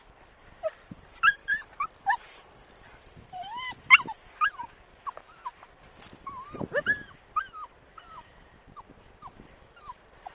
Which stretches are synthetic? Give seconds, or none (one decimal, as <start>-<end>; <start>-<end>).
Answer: 1.4-3.1